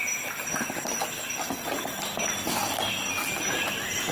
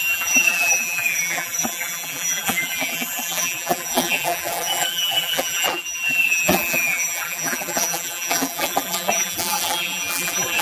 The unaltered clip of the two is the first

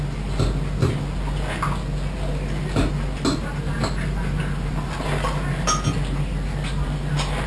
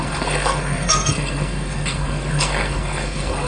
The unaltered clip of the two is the first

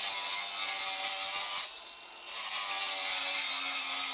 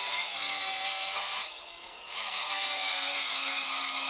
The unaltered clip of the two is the first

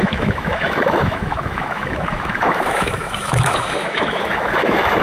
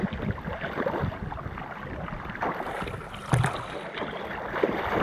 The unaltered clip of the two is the second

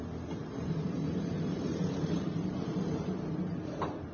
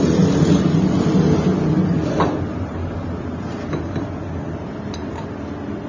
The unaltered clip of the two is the second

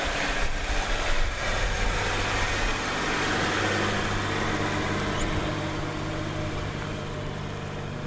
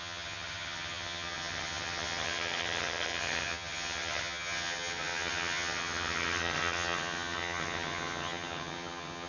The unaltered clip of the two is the first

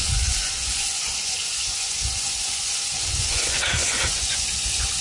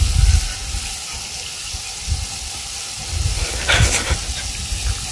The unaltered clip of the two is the second